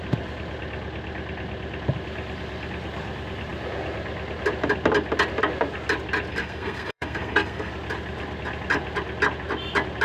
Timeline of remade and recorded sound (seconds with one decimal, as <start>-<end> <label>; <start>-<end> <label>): 0.0-6.3 recorded; 6.3-7.7 remade; 7.7-10.0 recorded